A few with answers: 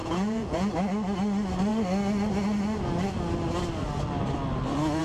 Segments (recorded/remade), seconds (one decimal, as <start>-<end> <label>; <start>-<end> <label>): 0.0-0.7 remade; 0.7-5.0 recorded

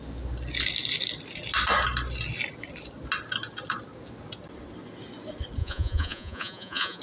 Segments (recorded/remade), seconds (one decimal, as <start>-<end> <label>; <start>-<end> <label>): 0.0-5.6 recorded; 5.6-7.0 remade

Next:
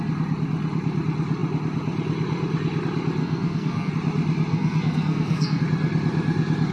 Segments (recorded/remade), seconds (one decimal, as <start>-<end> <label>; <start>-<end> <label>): 0.0-3.2 recorded; 3.2-3.9 remade; 3.9-4.5 recorded; 4.5-5.6 remade; 5.6-6.7 recorded

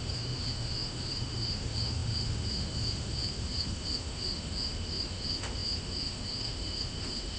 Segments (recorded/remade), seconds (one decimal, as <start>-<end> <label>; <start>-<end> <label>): 0.0-7.4 remade

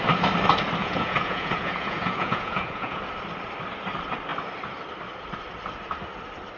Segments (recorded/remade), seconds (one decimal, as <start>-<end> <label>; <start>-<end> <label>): 0.0-0.8 recorded; 0.8-3.0 remade; 3.0-6.6 recorded

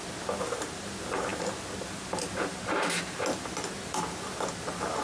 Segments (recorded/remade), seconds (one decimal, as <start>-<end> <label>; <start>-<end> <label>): 0.0-5.0 recorded